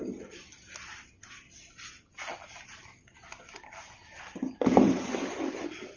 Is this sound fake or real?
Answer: real